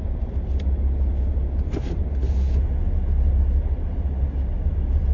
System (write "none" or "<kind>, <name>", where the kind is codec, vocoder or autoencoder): none